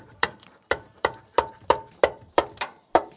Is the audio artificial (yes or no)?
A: yes